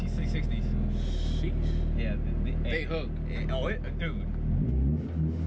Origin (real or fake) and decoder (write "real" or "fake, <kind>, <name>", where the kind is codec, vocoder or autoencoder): real